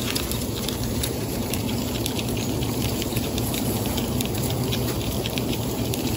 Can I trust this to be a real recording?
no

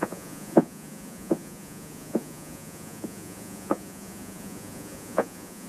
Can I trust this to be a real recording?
no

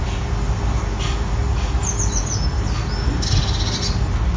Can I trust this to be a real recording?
yes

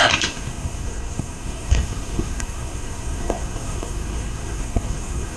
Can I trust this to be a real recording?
no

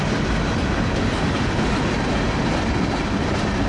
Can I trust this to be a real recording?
yes